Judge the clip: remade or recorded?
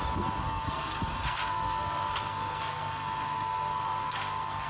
remade